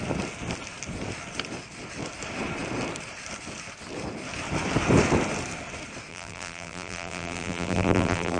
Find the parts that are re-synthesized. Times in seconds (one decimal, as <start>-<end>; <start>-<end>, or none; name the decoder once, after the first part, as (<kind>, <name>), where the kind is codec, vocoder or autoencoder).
6.1-8.4 (vocoder, BigVGAN v2)